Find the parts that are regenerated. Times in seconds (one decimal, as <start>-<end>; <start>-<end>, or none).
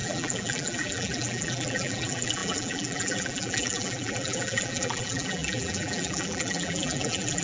0.0-7.4